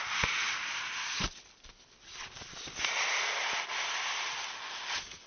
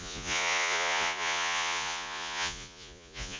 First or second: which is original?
first